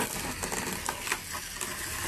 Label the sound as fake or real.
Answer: real